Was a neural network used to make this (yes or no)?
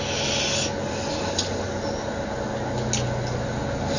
no